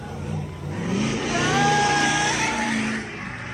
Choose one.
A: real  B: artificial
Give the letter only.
B